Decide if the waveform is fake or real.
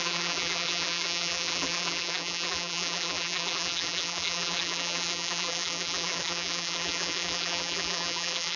fake